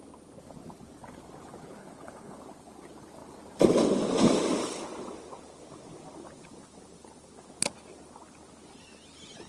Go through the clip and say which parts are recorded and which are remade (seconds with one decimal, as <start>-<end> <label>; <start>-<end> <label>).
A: 0.0-1.8 recorded; 1.8-2.4 remade; 2.4-9.5 recorded